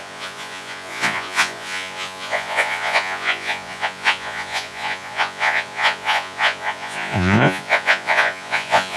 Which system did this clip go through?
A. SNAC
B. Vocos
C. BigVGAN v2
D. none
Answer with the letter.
B